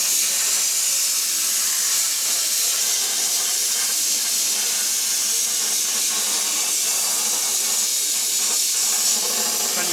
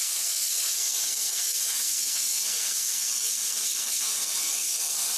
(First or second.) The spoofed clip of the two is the second